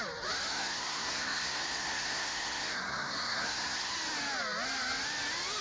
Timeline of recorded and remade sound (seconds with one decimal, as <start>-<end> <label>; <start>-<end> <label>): 0.0-0.5 recorded; 0.5-3.9 remade; 3.9-5.6 recorded